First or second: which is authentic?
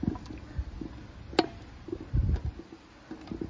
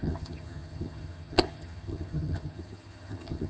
first